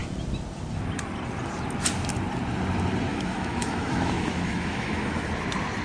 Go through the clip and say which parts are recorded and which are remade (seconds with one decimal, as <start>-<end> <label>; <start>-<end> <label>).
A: 0.0-3.1 recorded; 3.1-5.3 remade; 5.3-5.8 recorded